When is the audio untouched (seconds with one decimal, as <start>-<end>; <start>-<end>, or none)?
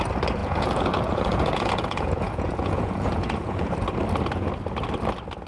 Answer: 0.0-0.4; 3.7-5.5